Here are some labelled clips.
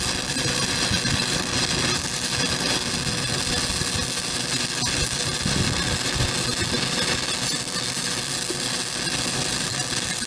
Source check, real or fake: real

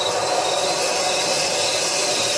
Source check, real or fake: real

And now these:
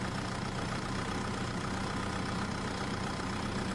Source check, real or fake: fake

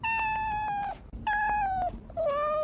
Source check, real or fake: real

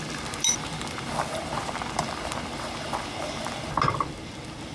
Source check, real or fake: fake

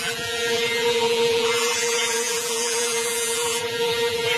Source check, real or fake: fake